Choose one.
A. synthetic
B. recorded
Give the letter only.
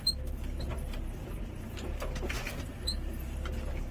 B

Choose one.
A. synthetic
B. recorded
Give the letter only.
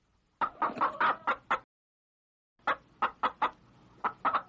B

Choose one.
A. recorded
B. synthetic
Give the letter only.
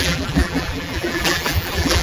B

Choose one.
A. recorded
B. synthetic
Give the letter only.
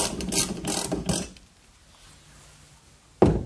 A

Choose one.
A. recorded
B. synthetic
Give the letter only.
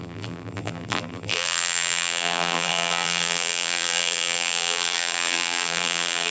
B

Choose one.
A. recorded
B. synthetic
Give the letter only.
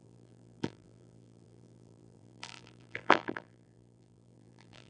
B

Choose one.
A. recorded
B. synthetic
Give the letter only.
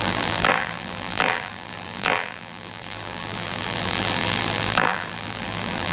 B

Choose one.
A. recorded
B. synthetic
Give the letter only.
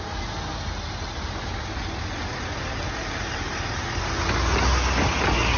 A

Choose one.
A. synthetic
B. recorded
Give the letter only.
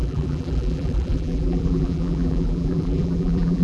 A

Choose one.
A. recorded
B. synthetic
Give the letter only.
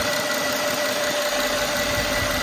A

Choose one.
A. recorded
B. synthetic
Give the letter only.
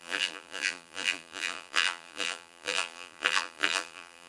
B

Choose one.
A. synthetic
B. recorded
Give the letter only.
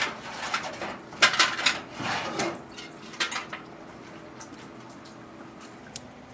A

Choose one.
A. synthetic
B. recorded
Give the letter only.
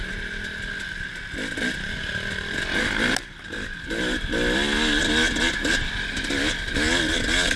B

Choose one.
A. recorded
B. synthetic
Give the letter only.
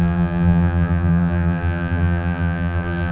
B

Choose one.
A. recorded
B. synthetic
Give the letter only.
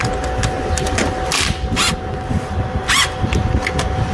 A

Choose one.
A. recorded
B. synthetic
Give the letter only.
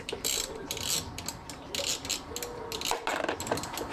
A